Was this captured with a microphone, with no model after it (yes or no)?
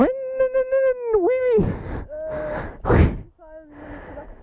yes